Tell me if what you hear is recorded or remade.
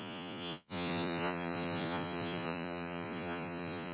remade